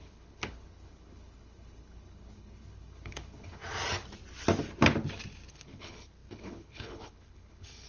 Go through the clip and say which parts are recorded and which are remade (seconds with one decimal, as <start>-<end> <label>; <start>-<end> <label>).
0.0-3.6 remade; 3.6-5.5 recorded; 5.5-7.9 remade